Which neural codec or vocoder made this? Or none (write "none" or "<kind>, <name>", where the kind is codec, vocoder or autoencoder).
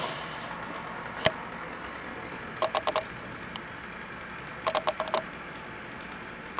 none